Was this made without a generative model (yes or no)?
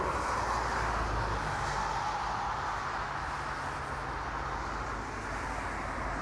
yes